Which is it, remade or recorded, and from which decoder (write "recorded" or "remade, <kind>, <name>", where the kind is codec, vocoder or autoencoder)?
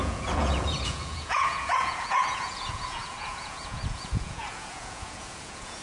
remade, vocoder, Vocos